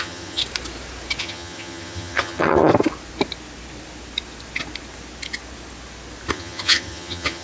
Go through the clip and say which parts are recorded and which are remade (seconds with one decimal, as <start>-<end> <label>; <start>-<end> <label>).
0.0-0.4 remade; 0.4-1.2 recorded; 1.2-2.7 remade; 2.7-6.3 recorded; 6.3-7.4 remade